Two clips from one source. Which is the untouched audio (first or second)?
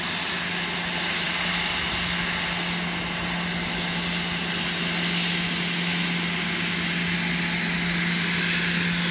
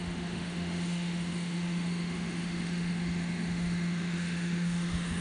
first